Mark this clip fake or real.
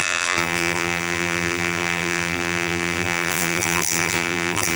fake